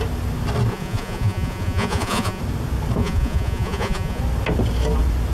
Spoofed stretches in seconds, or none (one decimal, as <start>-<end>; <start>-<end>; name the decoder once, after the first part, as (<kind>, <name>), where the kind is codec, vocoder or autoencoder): 0.7-2.4 (vocoder, Vocos); 3.0-4.2